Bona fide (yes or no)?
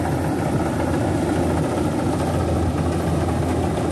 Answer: yes